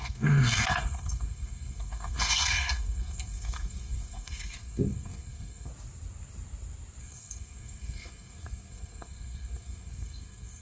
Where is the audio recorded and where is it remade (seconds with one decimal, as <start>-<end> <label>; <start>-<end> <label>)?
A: 0.0-5.7 remade; 5.7-7.0 recorded; 7.0-10.6 remade